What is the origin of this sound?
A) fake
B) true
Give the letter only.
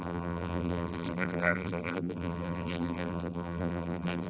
A